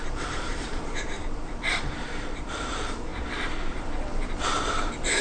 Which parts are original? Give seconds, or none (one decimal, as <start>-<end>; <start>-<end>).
3.1-3.7